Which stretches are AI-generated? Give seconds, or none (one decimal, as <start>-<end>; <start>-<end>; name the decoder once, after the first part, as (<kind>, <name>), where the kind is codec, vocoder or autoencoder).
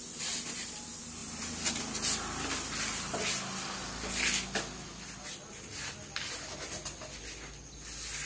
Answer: 1.2-1.8 (vocoder, BigVGAN v2)